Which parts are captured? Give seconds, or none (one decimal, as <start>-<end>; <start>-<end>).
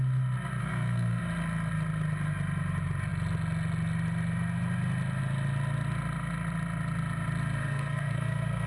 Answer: 0.0-0.6; 1.2-7.6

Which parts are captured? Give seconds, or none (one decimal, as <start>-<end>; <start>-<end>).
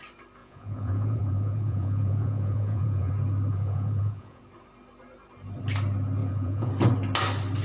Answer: 0.0-0.4; 3.1-3.5; 4.4-6.2; 6.7-7.6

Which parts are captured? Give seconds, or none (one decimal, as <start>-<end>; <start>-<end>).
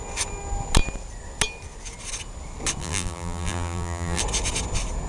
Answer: 0.0-2.8; 4.2-5.1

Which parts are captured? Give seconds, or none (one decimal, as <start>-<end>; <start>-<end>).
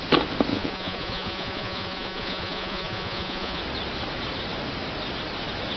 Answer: 0.0-0.5; 3.6-5.8